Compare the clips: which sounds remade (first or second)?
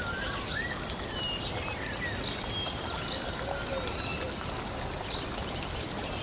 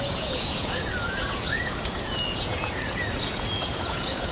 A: second